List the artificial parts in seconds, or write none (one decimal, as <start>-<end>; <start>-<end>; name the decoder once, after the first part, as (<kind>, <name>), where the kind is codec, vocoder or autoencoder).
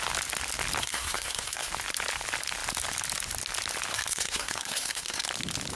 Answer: 0.8-1.7 (codec, SNAC); 3.9-5.3